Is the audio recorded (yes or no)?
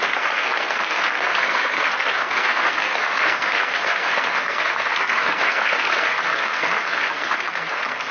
no